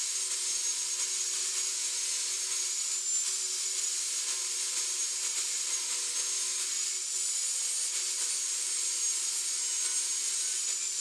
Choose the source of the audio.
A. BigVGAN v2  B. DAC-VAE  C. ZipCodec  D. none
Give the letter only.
D